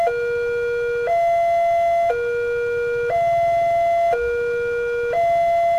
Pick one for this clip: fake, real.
real